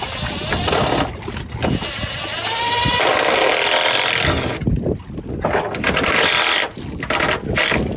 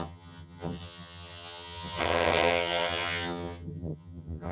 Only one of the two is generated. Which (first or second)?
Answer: second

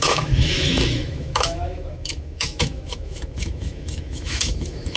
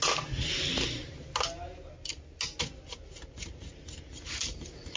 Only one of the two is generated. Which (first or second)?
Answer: first